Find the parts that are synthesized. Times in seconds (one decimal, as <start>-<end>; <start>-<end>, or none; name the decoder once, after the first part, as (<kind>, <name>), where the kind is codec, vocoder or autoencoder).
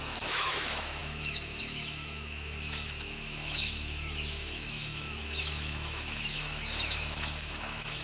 0.0-8.0 (autoencoder, DAC-VAE)